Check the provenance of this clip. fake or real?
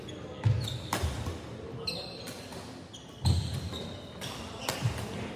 real